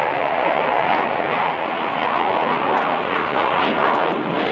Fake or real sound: fake